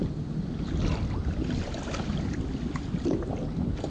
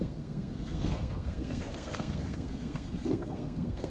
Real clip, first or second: first